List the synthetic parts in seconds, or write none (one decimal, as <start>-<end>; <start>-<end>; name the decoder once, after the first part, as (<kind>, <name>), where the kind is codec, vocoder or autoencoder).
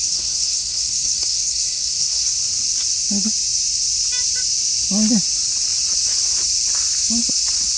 0.0-2.3 (codec, SNAC)